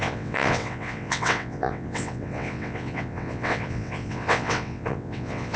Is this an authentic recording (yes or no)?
no